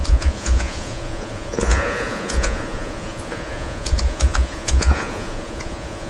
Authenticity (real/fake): fake